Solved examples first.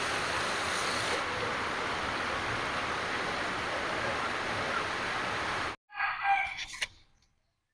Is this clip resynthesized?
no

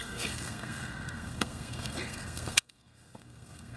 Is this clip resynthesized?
yes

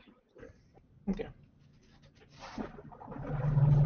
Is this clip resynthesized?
no